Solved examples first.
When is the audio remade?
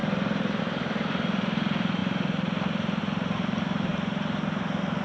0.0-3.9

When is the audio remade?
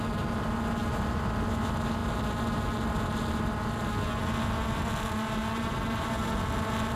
5.4-6.4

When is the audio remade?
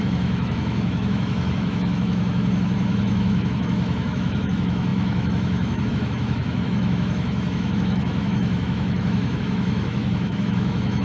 0.0-11.0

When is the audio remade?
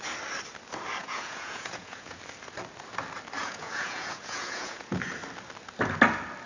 1.0-2.2; 3.4-5.1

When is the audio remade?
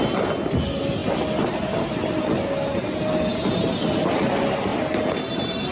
none